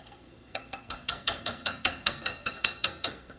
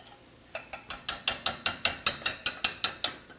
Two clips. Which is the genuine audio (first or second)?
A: second